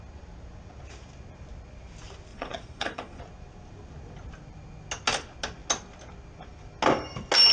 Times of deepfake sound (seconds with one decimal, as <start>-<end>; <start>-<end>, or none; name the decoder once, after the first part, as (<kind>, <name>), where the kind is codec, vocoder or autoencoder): 2.3-3.2 (vocoder, Vocos)